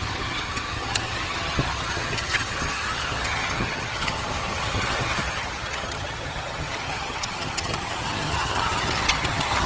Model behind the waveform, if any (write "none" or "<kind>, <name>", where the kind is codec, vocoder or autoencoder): vocoder, HiFi-GAN